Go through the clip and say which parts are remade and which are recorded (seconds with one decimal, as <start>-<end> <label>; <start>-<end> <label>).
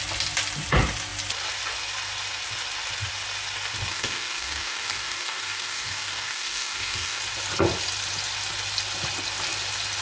0.0-3.9 recorded; 3.9-7.2 remade; 7.2-10.0 recorded